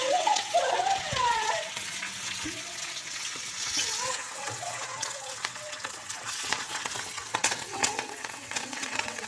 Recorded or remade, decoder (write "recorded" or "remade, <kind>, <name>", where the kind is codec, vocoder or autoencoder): remade, vocoder, WaveNeXt